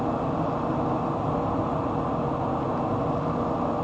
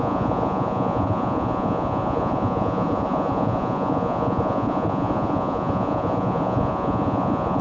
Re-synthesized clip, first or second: second